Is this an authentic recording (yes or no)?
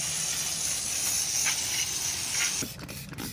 yes